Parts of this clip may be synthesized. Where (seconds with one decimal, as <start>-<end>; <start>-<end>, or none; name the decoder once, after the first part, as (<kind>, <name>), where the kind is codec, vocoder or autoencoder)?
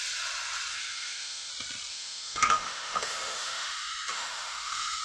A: 0.7-1.5 (autoencoder, DAC-VAE); 1.9-5.0